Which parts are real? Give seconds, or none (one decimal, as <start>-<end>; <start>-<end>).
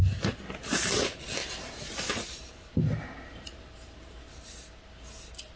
0.0-1.4; 2.8-5.6